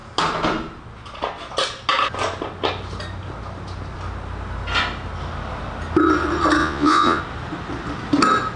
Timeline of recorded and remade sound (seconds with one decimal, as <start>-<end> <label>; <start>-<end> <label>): 0.0-6.6 recorded; 6.6-7.2 remade; 7.2-8.6 recorded